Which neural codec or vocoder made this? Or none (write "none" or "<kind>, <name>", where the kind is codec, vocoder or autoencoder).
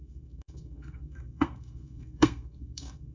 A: codec, SNAC